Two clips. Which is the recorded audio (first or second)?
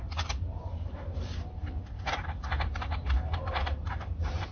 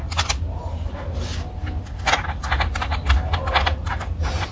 second